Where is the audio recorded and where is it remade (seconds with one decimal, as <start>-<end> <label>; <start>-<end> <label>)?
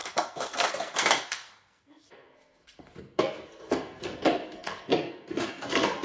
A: 0.0-6.0 remade